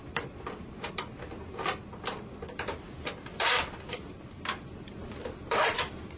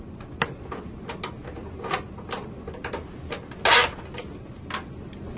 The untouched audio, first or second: second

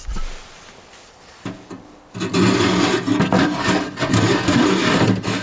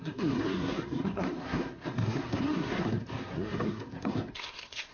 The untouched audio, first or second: first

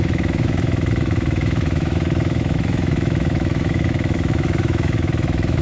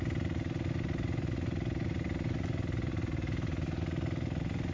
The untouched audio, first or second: second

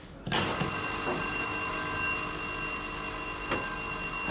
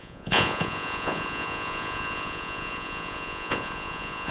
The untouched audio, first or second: first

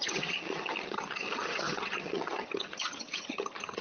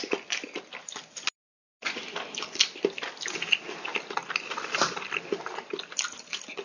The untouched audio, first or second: second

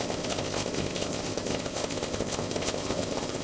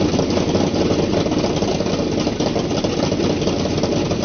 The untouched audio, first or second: second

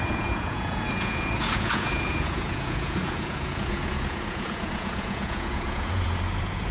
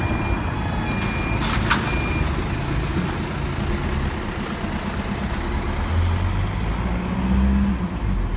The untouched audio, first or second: second